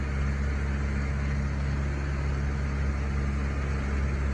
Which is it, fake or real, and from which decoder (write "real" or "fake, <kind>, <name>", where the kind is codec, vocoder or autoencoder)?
real